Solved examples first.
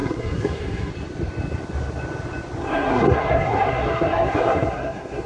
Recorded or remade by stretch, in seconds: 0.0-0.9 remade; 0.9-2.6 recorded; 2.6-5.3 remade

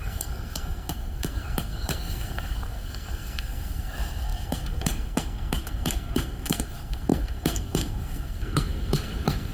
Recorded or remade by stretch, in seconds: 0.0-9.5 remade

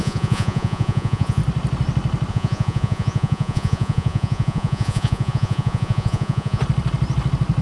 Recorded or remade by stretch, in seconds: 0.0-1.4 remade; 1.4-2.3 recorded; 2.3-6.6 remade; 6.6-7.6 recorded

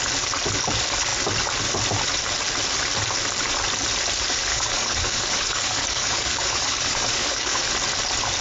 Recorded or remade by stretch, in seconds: 0.0-4.5 recorded; 4.5-7.7 remade; 7.7-8.4 recorded

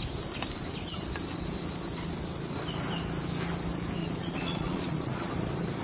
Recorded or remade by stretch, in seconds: 0.0-4.0 recorded; 4.0-5.3 remade; 5.3-5.8 recorded

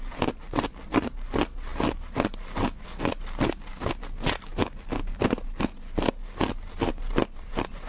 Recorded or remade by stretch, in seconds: 0.0-7.9 recorded

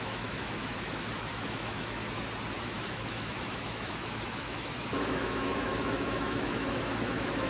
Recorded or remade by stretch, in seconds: 0.0-2.0 remade; 2.0-2.6 recorded; 2.6-7.5 remade